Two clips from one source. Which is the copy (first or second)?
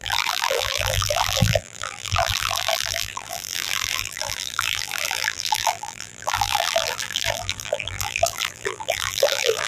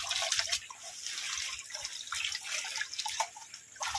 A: first